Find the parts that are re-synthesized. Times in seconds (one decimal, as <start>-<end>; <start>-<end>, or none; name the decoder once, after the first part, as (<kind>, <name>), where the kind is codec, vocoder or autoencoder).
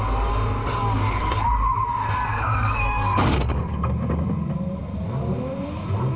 0.6-1.4 (codec, DAC); 2.3-3.6